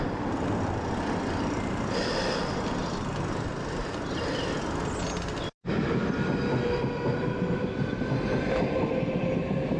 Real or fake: real